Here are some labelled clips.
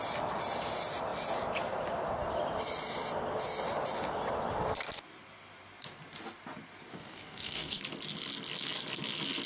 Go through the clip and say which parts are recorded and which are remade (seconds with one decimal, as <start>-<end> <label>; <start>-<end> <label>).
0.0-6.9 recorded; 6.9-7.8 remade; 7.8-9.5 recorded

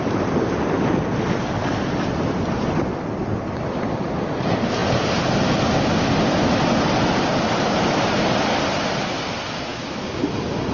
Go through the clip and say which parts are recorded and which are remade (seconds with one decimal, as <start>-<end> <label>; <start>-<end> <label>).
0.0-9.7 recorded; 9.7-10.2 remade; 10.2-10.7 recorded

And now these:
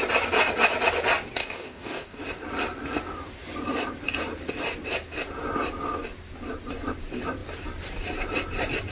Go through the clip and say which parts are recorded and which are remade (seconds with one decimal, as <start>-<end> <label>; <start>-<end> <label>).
0.0-1.4 recorded; 1.4-2.2 remade; 2.2-8.9 recorded